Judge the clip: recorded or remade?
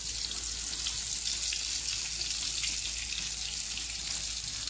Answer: recorded